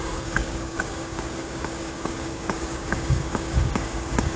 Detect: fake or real fake